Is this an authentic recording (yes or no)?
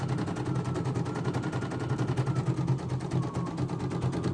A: yes